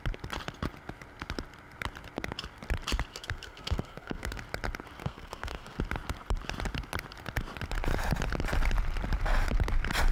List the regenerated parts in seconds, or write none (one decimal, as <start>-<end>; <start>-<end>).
3.1-4.4; 5.0-5.8